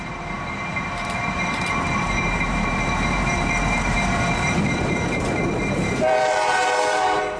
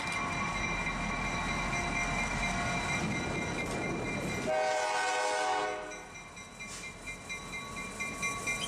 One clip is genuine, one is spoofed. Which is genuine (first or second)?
second